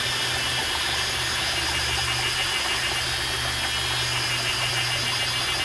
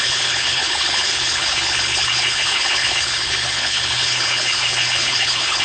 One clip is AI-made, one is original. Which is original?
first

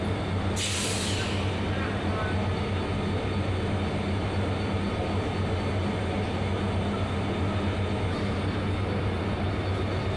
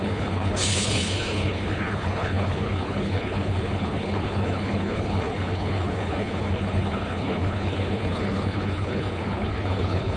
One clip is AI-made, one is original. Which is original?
first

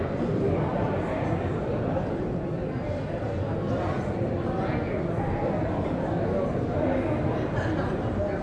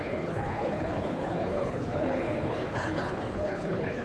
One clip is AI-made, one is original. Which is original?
first